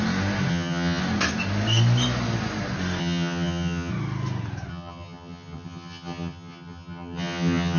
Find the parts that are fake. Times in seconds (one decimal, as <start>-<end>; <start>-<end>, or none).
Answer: 0.5-1.0; 3.0-3.9; 4.7-7.8

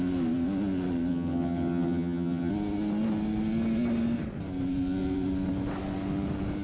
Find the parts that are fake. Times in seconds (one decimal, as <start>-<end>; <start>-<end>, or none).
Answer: 1.1-2.5

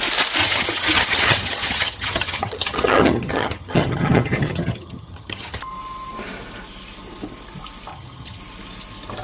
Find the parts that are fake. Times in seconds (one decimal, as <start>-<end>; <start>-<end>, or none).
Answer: 0.4-5.6; 7.9-8.4

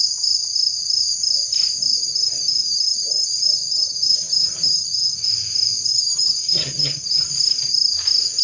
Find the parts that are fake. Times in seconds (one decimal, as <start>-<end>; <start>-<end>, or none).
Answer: 2.0-5.3; 5.9-7.3